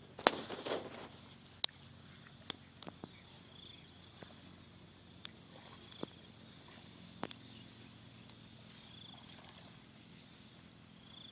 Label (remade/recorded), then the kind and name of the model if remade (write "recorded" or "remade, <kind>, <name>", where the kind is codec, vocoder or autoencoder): recorded